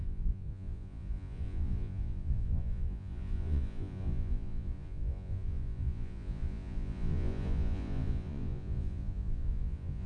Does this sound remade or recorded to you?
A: remade